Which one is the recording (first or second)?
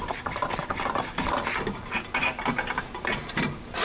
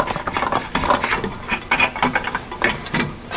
second